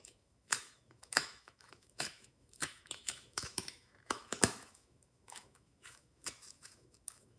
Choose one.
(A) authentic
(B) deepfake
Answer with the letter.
B